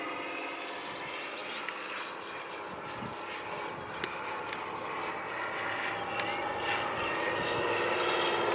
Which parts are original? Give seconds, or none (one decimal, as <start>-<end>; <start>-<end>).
0.0-8.5